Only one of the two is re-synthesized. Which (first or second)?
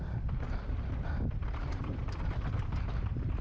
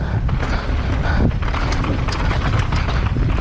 first